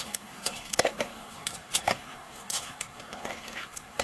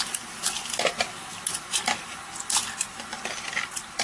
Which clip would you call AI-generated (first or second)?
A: first